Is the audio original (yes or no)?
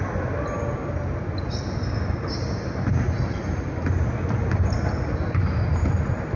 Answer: yes